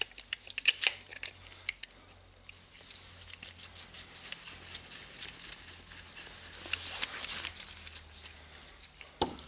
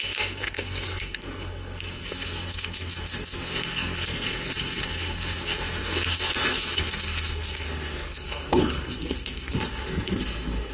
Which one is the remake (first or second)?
second